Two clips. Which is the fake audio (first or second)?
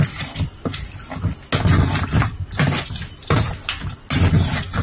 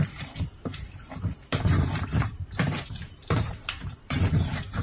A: second